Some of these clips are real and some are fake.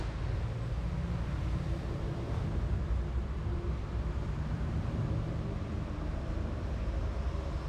fake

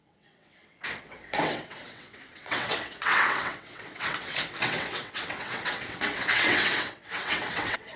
fake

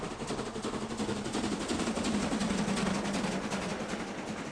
real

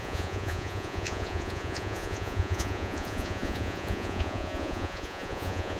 fake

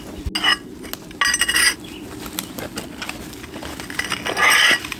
real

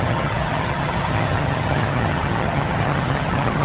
fake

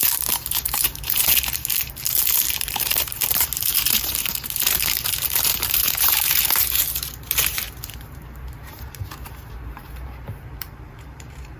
fake